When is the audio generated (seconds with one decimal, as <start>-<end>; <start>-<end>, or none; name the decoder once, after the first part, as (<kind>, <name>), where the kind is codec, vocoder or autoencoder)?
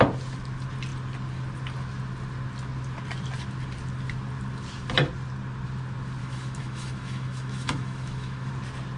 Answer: 6.2-8.5 (autoencoder, DAC-VAE)